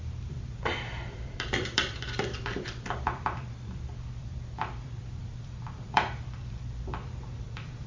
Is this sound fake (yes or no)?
yes